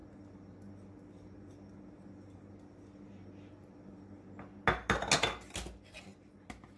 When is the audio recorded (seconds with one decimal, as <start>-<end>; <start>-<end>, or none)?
0.0-6.8